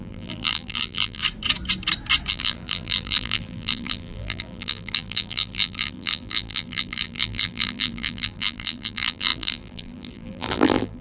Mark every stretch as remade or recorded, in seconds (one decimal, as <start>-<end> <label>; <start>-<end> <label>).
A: 0.0-1.2 remade; 1.2-2.3 recorded; 2.3-11.0 remade

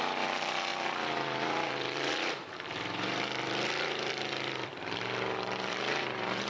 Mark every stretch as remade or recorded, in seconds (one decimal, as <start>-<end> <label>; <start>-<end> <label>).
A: 0.0-6.5 remade

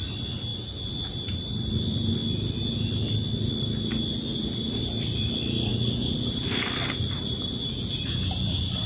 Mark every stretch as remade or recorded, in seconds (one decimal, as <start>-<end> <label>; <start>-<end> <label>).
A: 0.0-0.5 remade; 0.5-1.1 recorded; 1.1-2.2 remade; 2.2-4.0 recorded; 4.0-5.7 remade; 5.7-7.1 recorded; 7.1-8.9 remade

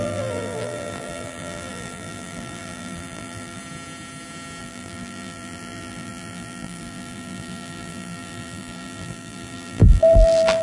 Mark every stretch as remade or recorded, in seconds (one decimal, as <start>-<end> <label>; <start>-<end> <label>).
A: 0.0-3.6 remade; 3.6-4.6 recorded; 4.6-10.6 remade

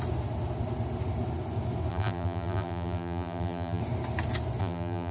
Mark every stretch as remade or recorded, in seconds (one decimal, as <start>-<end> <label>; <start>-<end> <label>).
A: 0.0-1.9 recorded; 1.9-3.8 remade; 3.8-4.6 recorded; 4.6-5.1 remade